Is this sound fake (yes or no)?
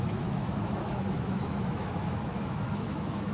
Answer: yes